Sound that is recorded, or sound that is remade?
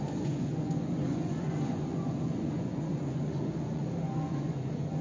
remade